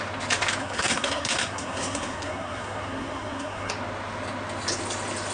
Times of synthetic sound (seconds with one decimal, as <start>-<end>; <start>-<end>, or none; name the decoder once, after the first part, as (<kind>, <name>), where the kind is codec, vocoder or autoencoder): 0.6-3.7 (codec, SNAC)